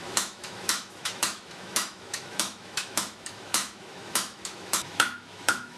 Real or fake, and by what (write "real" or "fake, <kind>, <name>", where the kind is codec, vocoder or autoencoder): fake, autoencoder, DAC-VAE